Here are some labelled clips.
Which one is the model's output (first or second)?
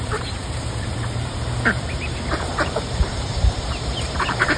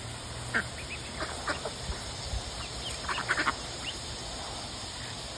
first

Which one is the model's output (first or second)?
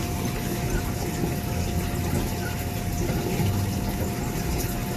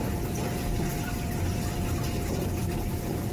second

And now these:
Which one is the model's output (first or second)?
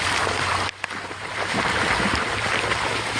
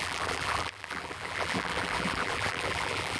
second